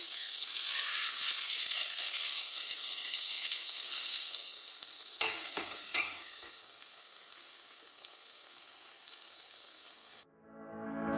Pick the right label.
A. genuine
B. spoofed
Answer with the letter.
B